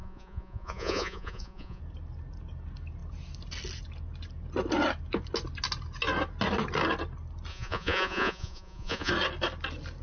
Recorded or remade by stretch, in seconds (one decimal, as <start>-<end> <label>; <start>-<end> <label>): 0.0-1.8 remade; 1.8-7.5 recorded; 7.5-9.1 remade; 9.1-10.0 recorded